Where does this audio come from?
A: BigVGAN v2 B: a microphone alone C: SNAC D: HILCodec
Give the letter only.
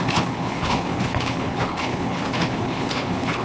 D